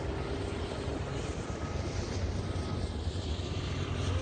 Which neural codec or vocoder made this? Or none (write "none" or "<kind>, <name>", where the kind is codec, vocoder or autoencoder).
none